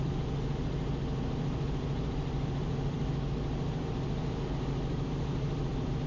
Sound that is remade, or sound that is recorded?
recorded